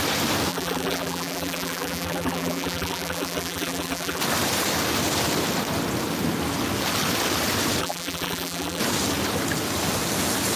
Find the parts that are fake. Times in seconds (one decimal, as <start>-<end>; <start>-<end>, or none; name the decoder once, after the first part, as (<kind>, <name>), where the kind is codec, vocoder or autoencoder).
0.5-4.2 (vocoder, BigVGAN v2); 7.8-8.8